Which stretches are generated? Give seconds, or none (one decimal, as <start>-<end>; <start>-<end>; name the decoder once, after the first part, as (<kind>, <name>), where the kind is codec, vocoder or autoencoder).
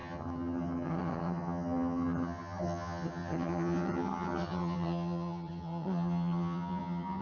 0.0-7.2 (vocoder, HiFi-GAN)